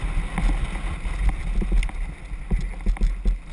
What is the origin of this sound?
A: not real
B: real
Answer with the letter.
B